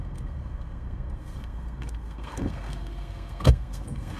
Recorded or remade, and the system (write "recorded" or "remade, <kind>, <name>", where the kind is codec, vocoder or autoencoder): remade, codec, SNAC